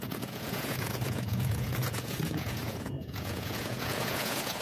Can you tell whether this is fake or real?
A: fake